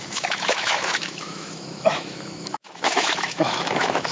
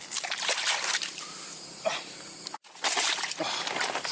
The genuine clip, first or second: second